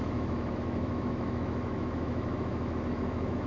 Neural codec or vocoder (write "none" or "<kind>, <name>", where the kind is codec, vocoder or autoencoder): autoencoder, DAC-VAE